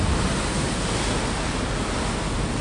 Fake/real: real